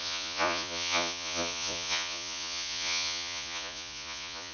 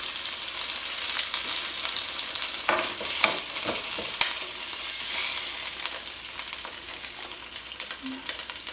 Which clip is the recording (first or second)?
second